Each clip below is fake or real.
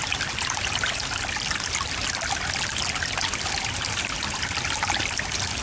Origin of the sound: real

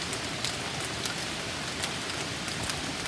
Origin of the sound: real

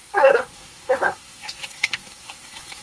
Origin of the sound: fake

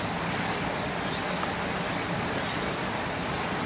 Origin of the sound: real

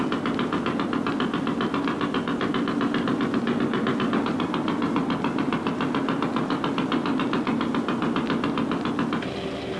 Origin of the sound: real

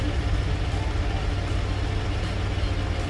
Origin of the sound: real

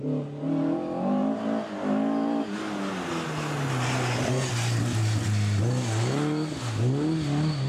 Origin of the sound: real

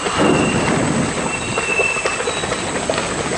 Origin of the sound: real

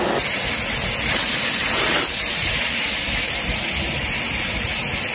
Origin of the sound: real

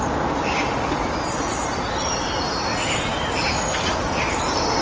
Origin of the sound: real